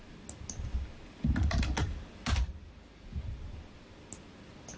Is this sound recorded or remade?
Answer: recorded